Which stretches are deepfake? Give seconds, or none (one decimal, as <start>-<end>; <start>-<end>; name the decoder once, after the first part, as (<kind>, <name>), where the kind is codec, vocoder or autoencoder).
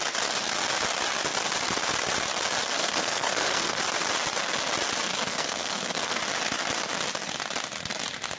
2.8-3.8 (codec, SNAC); 5.3-6.2